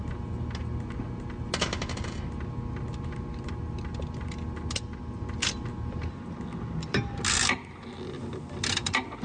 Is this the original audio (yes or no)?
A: yes